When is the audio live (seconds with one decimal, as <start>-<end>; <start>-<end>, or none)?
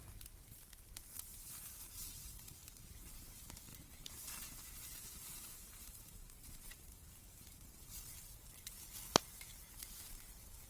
0.0-1.3; 3.1-3.7; 8.0-10.7